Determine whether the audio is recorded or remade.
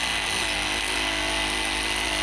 recorded